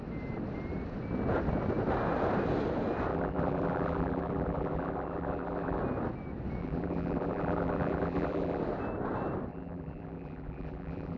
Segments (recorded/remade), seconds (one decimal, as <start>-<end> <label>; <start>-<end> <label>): 0.0-3.1 recorded; 3.1-5.8 remade; 5.8-6.6 recorded; 6.6-8.6 remade; 8.6-9.5 recorded; 9.5-11.2 remade